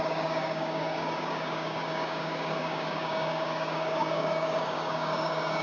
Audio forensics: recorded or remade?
remade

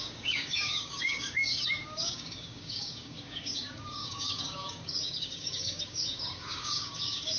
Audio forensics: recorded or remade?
remade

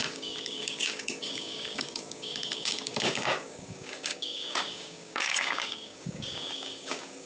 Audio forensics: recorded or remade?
remade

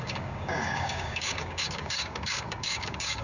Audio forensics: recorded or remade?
remade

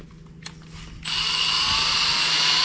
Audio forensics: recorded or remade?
recorded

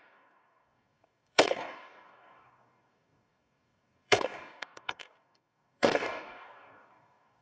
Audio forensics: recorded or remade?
remade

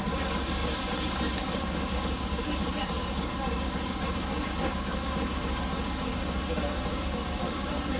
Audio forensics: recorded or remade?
remade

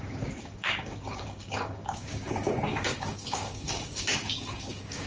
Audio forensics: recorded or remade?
remade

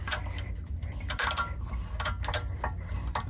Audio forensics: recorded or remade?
recorded